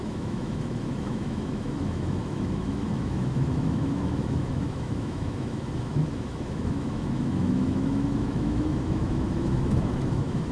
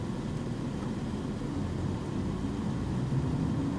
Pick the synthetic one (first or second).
first